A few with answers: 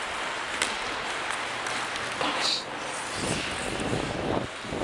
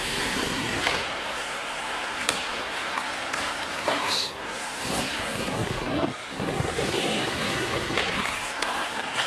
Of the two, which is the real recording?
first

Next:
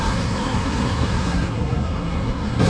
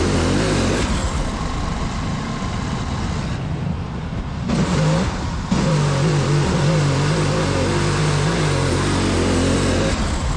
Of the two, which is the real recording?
second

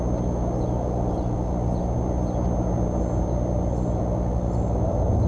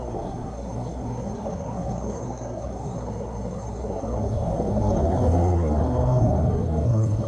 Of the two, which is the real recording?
first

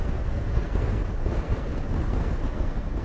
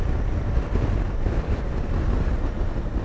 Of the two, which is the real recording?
second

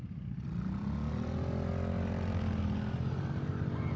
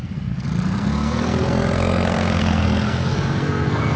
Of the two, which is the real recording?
first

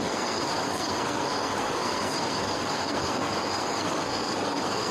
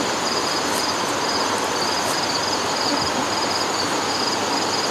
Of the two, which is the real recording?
second